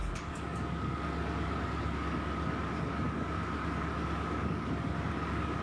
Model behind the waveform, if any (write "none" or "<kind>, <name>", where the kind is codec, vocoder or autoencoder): codec, DAC